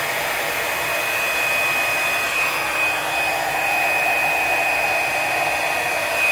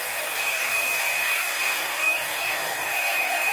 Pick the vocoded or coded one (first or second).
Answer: second